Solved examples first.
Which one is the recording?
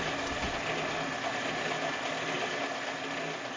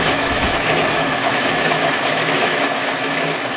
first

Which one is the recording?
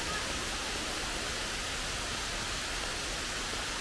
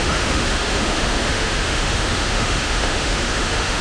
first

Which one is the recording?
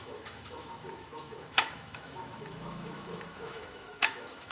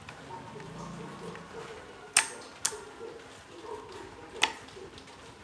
second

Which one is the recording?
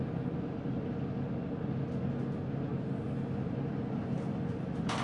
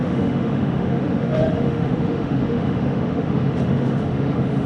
first